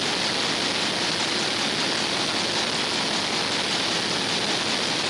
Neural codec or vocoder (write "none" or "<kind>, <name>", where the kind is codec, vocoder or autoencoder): none